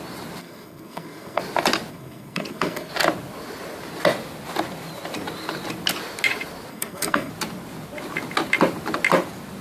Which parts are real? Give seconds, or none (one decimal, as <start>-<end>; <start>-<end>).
0.0-0.4; 1.4-1.9; 2.9-6.7; 7.3-9.6